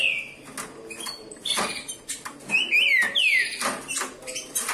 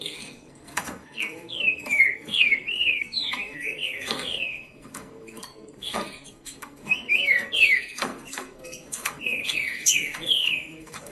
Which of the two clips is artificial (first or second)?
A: second